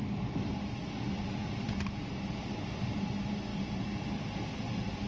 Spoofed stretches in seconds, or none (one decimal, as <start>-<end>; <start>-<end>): none